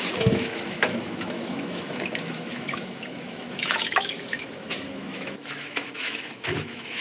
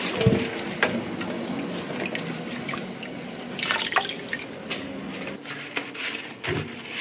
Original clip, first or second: second